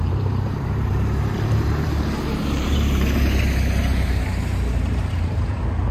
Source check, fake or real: fake